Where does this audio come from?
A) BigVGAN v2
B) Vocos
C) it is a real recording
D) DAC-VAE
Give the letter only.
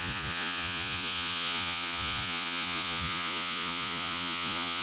B